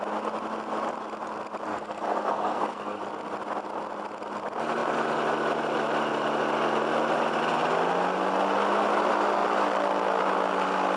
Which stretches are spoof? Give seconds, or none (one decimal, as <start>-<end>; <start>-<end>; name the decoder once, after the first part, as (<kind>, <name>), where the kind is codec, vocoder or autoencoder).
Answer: 1.7-3.0 (codec, SNAC)